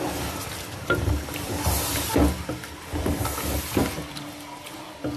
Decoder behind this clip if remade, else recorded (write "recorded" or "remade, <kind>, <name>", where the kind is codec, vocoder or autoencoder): recorded